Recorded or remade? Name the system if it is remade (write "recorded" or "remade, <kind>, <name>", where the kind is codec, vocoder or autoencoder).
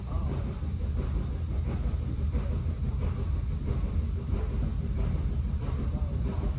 recorded